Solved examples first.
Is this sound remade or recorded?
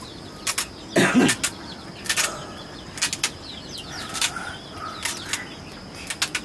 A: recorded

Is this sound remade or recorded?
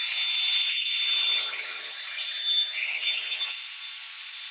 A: recorded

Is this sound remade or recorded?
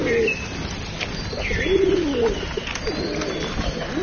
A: recorded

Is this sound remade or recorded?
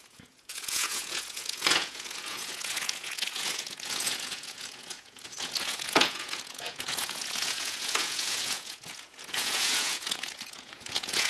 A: remade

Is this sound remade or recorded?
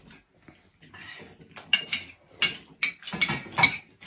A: recorded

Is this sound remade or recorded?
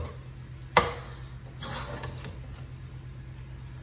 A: recorded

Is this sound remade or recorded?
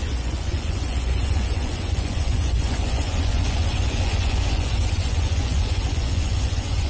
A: remade